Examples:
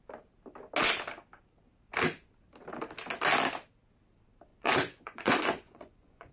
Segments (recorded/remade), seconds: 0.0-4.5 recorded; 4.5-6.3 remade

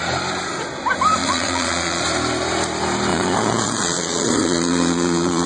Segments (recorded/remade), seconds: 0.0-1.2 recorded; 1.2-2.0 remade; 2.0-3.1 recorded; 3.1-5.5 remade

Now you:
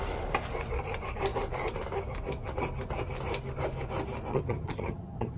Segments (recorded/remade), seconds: 0.0-4.3 recorded; 4.3-5.4 remade

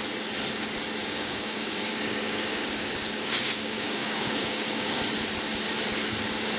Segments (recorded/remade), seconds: 0.0-1.0 recorded; 1.0-5.0 remade; 5.0-6.6 recorded

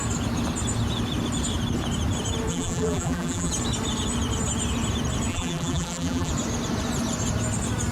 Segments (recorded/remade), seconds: 0.0-2.5 recorded; 2.5-3.5 remade; 3.5-5.3 recorded; 5.3-6.3 remade; 6.3-7.9 recorded

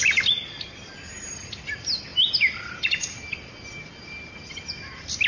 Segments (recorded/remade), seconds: 0.0-5.3 recorded

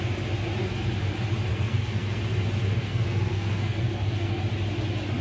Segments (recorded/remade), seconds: 0.0-1.5 recorded; 1.5-2.2 remade; 2.2-2.8 recorded; 2.8-4.4 remade; 4.4-5.2 recorded

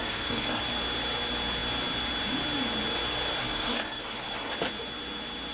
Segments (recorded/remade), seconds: 0.0-0.6 remade; 0.6-3.4 recorded; 3.4-4.5 remade; 4.5-5.5 recorded